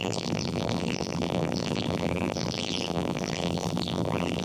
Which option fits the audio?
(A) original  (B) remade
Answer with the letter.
B